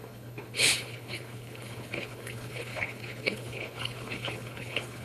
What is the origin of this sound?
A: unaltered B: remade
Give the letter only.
B